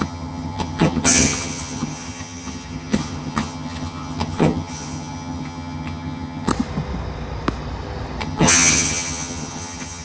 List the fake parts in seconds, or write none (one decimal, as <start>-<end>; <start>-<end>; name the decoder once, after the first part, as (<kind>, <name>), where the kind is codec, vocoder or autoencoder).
0.0-6.5 (vocoder, HiFi-GAN); 8.2-10.0

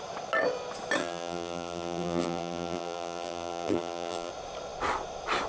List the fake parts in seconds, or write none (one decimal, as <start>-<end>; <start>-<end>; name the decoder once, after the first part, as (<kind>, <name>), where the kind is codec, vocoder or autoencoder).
1.0-4.3 (vocoder, BigVGAN v2)

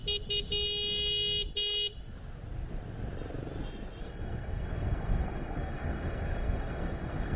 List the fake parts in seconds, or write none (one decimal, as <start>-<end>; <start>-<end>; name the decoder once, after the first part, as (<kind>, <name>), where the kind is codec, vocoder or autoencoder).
4.0-7.4 (codec, SNAC)

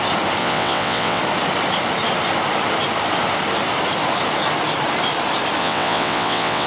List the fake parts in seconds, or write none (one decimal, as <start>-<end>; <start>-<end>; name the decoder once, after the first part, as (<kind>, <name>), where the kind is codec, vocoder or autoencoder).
0.4-1.2 (vocoder, WaveNeXt); 5.6-6.7

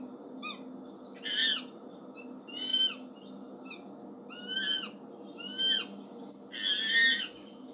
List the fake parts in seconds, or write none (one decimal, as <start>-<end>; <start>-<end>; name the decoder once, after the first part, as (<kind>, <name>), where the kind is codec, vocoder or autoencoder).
1.4-2.0 (vocoder, BigVGAN v2); 2.7-3.3; 4.6-5.1